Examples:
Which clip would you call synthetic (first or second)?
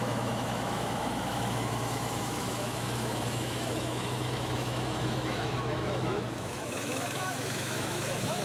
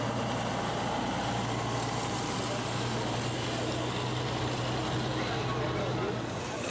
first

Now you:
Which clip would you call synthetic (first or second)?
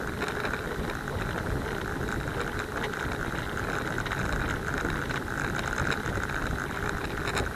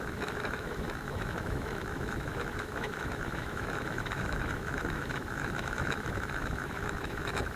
second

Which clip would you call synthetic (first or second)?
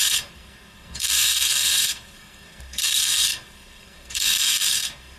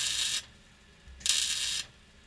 first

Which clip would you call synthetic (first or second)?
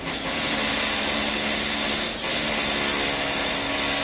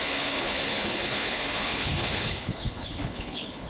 second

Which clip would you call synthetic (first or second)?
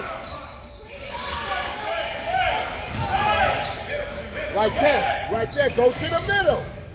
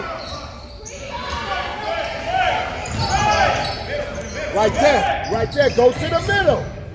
first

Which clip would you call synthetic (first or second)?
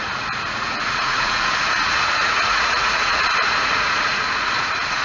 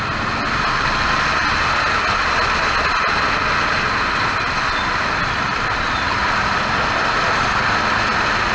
first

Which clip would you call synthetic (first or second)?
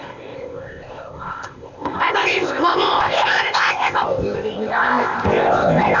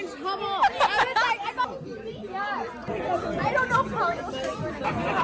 first